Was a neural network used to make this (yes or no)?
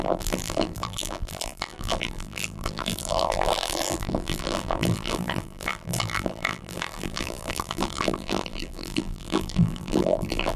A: yes